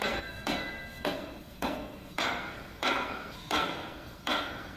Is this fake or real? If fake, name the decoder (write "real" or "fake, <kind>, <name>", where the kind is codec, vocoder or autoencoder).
fake, codec, SNAC